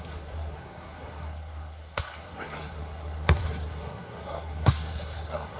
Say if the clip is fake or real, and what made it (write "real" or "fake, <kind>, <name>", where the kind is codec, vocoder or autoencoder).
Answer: fake, codec, SNAC